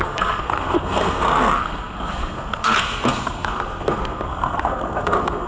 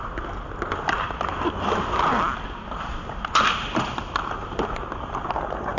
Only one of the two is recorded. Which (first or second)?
second